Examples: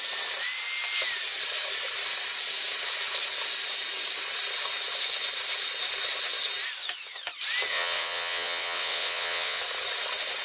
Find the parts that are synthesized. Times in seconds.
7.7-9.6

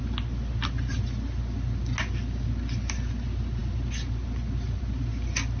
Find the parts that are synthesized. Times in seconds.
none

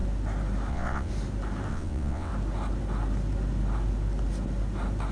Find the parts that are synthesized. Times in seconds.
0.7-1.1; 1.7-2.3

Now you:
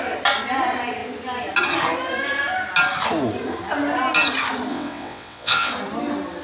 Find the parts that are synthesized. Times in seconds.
4.7-5.7

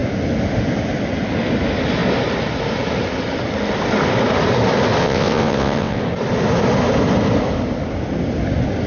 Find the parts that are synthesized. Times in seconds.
5.0-6.0

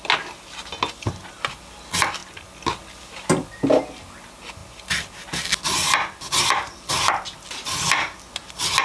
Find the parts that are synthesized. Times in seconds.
none